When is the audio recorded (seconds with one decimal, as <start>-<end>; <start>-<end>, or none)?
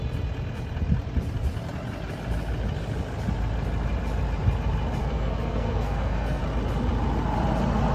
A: 0.0-5.0; 6.4-7.9